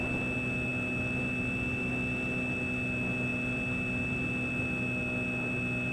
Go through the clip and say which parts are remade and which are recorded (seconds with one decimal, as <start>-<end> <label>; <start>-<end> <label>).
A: 0.0-5.9 recorded